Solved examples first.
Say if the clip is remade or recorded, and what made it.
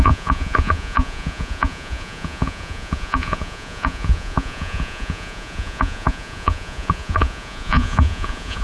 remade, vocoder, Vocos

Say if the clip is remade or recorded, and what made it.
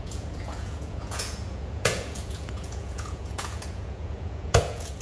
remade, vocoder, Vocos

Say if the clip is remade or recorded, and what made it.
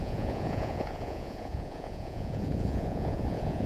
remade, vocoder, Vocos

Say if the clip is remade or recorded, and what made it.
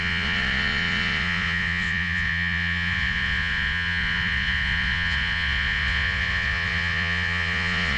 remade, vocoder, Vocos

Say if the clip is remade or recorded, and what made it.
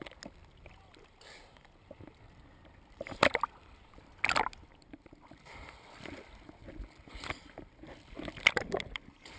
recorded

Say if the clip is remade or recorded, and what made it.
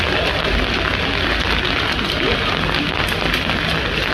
recorded